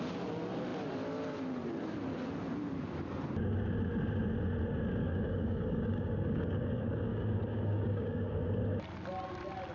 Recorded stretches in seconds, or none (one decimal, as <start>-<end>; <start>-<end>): 0.0-5.0; 8.6-9.7